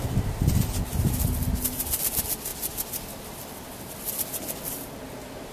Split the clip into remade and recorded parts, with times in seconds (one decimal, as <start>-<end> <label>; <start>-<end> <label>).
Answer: 0.0-5.5 recorded